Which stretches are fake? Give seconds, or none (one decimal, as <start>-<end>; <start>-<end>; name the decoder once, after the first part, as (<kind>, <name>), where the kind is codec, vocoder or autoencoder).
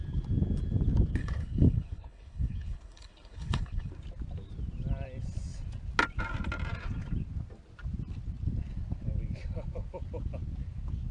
1.2-3.9 (codec, HILCodec)